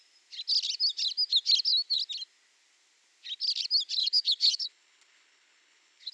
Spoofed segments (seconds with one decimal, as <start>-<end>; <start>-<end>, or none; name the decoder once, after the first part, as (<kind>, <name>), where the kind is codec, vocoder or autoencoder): 4.0-6.1 (codec, HILCodec)